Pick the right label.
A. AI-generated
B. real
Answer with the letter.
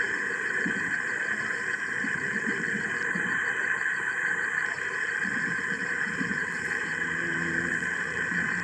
A